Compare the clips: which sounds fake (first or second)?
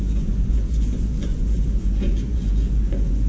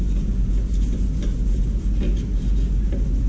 first